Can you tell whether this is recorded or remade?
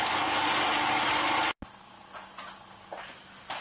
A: recorded